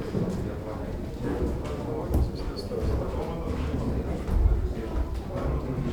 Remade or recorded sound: recorded